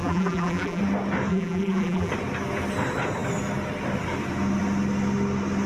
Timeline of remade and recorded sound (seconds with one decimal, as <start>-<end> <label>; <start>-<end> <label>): 0.0-0.8 remade; 0.8-1.3 recorded; 1.3-2.1 remade; 2.1-5.7 recorded